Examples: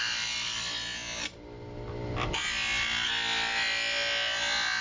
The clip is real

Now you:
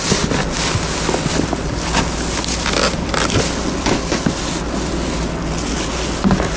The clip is real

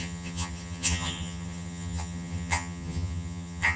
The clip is fake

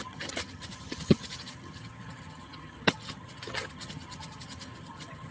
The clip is fake